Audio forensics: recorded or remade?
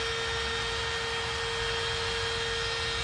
recorded